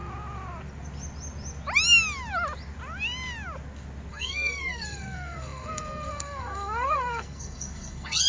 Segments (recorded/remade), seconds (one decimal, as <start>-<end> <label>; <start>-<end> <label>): 0.0-4.1 recorded; 4.1-8.3 remade